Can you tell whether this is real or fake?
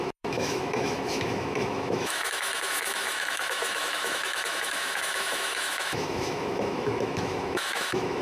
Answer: fake